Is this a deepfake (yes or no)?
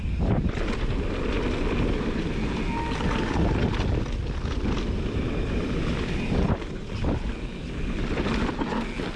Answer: no